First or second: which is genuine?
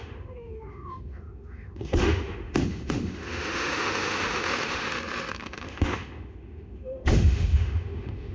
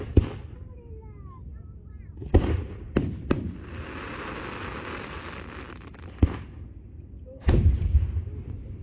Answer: second